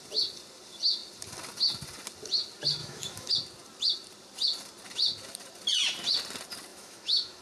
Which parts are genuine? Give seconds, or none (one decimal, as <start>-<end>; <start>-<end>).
0.0-2.8; 3.3-6.7